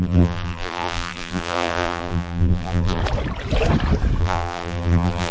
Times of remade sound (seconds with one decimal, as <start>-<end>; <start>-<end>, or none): 0.0-3.0; 4.2-5.3